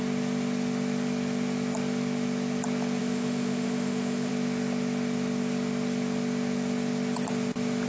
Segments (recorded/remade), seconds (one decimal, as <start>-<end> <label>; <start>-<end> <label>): 0.0-3.0 recorded; 3.0-4.3 remade; 4.3-7.9 recorded